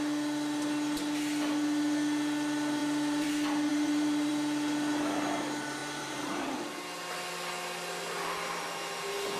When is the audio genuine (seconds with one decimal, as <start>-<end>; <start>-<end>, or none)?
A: 0.0-2.8; 3.3-3.7; 4.3-5.8; 6.3-9.4